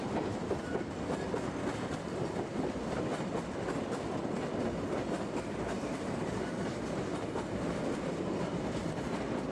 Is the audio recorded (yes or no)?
yes